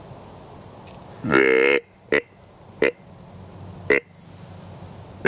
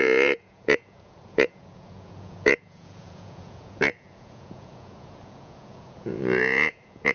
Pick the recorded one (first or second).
first